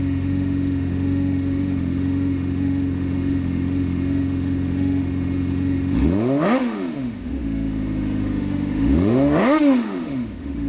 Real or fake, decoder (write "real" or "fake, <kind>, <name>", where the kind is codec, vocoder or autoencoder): fake, autoencoder, DAC-VAE